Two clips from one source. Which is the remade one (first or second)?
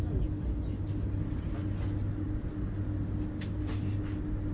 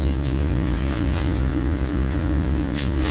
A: second